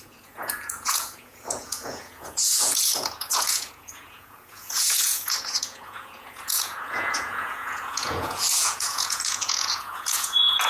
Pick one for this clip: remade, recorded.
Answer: remade